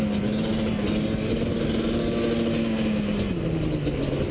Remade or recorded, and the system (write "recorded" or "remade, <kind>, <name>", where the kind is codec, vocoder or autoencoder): recorded